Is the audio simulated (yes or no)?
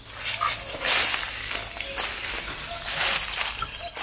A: no